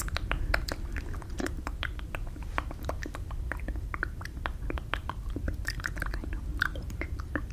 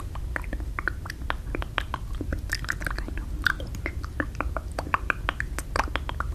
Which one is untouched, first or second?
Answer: second